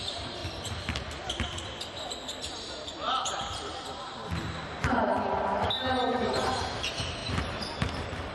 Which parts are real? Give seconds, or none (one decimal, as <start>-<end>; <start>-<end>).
0.4-2.1; 5.1-5.9